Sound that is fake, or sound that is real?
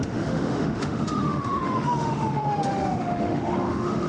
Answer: fake